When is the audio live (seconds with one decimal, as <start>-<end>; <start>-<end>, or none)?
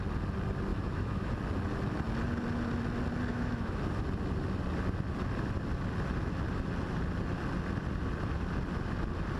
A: 0.0-0.7; 1.3-3.3; 3.8-9.4